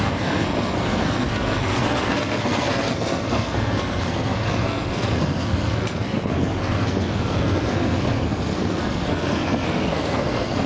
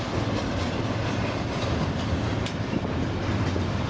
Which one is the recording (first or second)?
second